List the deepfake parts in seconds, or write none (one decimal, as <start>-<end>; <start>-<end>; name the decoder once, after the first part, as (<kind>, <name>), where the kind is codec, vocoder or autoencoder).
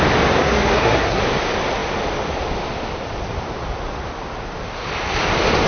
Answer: 0.4-1.2 (codec, SNAC)